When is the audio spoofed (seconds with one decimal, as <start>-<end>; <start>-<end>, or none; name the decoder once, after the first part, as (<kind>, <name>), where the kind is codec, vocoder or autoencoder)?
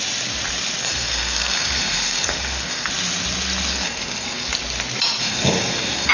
0.8-2.9 (codec, SNAC); 3.7-4.5; 5.2-6.1